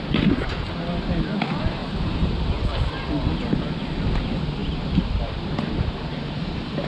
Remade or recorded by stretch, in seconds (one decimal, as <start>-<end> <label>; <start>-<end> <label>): 0.0-1.8 recorded; 1.8-2.3 remade; 2.3-6.9 recorded